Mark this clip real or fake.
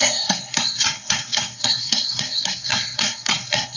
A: fake